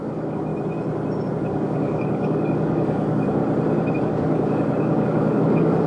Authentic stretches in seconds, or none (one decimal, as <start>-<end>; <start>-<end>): 0.5-1.3; 3.4-4.0